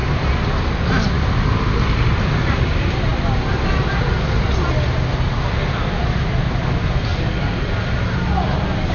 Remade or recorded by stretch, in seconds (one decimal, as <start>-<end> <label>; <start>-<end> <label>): 0.0-8.9 recorded